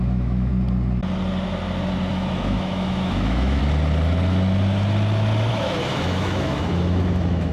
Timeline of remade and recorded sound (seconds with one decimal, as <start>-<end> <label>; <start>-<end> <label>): 0.0-0.5 remade; 0.5-2.1 recorded; 2.1-3.6 remade; 3.6-5.5 recorded; 5.5-7.5 remade